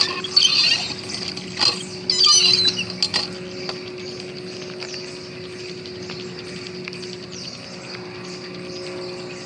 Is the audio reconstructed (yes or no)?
no